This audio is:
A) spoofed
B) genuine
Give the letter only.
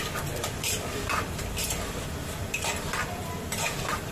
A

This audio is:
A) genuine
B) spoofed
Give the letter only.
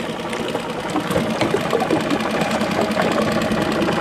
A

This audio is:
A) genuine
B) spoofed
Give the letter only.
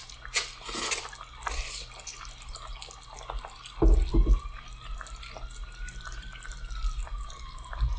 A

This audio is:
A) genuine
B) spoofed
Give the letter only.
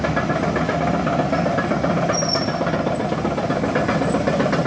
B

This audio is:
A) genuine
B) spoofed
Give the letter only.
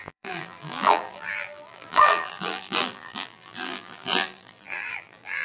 B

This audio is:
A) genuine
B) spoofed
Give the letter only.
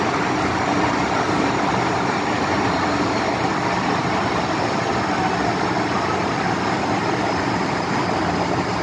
A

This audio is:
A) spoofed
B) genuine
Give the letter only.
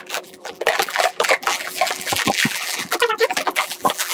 A